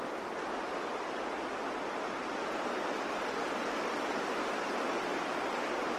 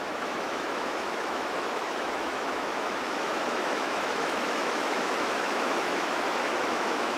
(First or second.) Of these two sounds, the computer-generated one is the second